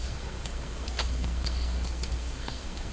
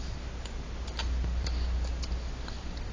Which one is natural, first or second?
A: second